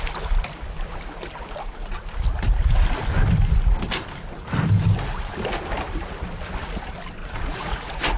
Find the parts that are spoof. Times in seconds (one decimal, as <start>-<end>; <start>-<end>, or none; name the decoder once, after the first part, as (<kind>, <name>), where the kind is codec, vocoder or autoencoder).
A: 7.2-8.2 (vocoder, Vocos)